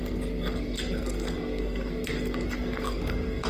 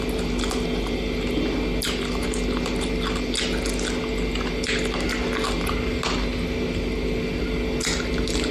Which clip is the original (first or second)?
second